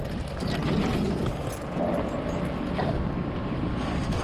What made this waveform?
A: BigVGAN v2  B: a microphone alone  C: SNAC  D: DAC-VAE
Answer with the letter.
B